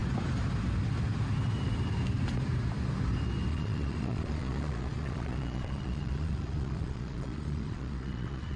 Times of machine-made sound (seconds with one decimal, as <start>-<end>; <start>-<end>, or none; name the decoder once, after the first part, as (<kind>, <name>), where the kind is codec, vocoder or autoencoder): 3.5-8.6 (vocoder, Vocos)